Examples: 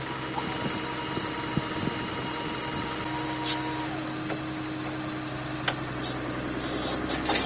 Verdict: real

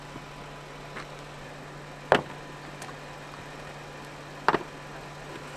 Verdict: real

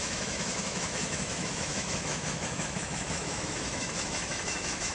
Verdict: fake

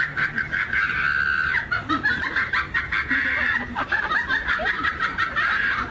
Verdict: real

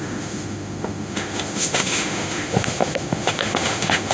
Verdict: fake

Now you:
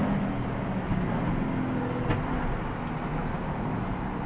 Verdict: real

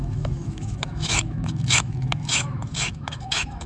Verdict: fake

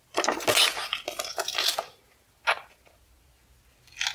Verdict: real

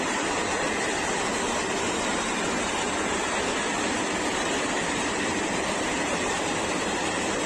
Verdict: real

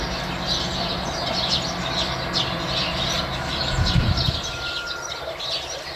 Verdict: real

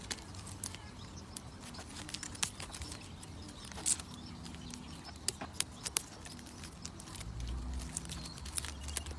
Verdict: real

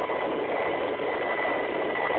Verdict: real